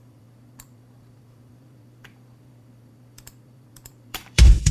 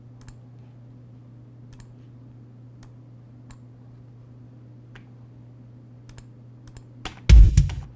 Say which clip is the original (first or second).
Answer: second